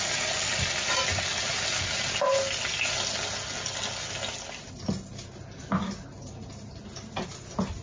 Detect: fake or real real